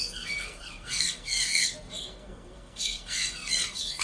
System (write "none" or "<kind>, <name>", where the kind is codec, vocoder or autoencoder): codec, SNAC